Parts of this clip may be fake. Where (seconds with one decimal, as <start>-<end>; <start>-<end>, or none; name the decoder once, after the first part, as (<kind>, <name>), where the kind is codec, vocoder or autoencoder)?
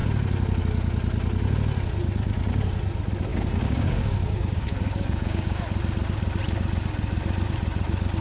3.3-5.6 (codec, DAC)